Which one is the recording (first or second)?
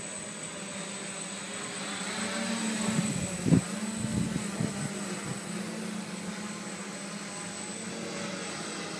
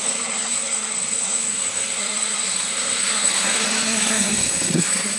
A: first